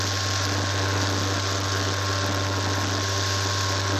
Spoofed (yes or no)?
no